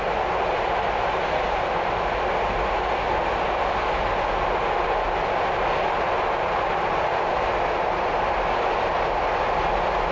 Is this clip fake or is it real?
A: real